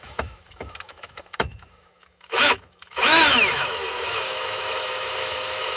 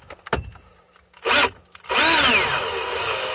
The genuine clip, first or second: second